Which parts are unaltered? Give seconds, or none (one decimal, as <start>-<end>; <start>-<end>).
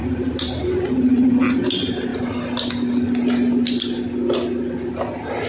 0.0-5.5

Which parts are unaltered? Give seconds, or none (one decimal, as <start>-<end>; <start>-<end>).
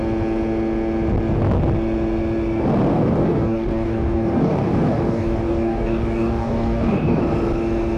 0.0-2.9; 7.2-8.0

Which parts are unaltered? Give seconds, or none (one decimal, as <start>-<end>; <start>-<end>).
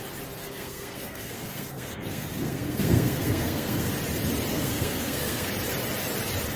0.0-0.4; 3.9-4.5; 5.5-6.6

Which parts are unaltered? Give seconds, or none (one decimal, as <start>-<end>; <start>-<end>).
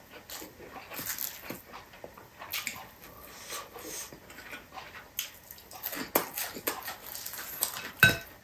0.0-8.4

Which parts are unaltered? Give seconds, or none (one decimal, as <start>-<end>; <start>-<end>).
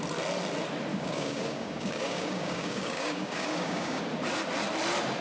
0.0-0.9; 4.0-5.2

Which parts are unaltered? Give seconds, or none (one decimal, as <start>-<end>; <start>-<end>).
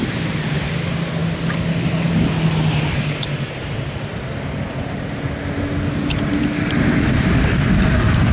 0.0-8.3